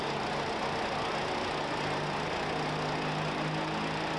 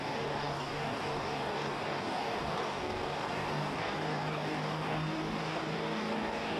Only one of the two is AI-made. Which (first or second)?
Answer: second